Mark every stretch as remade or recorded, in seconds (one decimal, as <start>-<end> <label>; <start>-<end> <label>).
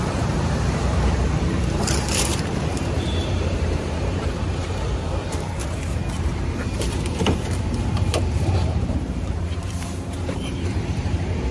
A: 0.0-11.5 remade